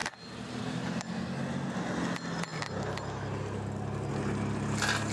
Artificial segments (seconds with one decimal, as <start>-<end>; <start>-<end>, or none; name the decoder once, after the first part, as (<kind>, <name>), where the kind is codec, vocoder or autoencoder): none